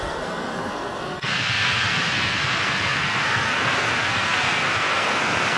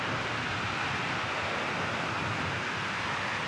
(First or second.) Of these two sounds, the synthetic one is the first